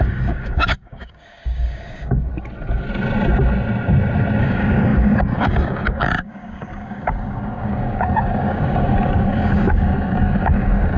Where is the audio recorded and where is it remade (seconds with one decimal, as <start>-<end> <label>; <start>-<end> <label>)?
0.0-2.3 remade; 2.3-4.4 recorded; 4.4-11.0 remade